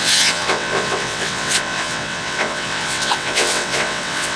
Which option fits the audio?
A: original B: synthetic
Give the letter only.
B